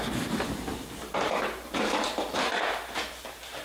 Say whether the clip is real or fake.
fake